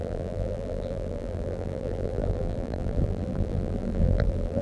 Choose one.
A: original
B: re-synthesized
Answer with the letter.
B